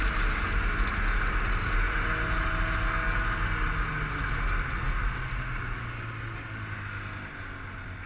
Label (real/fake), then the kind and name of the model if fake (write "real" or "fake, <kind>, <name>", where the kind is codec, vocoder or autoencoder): real